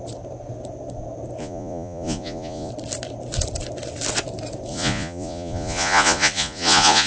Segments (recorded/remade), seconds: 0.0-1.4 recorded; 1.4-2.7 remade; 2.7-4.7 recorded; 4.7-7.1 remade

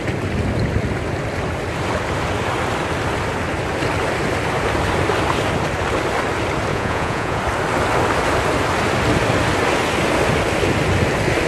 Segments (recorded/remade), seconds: 0.0-6.7 recorded; 6.7-7.4 remade; 7.4-11.5 recorded

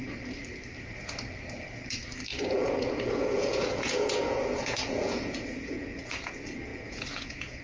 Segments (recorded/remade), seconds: 0.0-2.3 recorded; 2.3-6.3 remade; 6.3-6.7 recorded; 6.7-7.6 remade

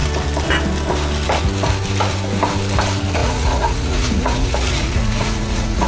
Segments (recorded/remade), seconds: 0.0-3.2 recorded; 3.2-5.9 remade

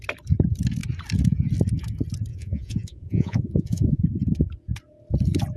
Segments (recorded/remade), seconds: 0.0-2.3 recorded; 2.3-4.0 remade; 4.0-5.6 recorded